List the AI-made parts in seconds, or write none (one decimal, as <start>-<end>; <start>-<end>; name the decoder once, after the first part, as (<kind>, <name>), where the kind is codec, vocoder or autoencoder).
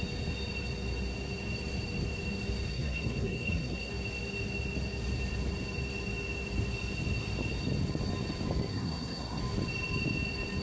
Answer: 2.7-3.9 (codec, SNAC); 8.7-9.4